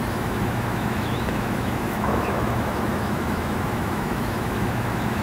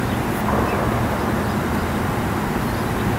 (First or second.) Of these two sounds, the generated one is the first